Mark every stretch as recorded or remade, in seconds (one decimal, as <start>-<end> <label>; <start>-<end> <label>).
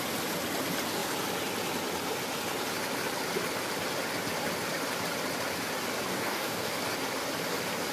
0.0-6.1 recorded; 6.1-6.7 remade; 6.7-7.9 recorded